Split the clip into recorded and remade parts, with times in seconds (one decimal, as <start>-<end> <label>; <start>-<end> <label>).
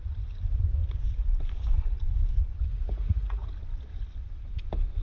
0.0-2.7 recorded; 2.7-3.5 remade; 3.5-5.0 recorded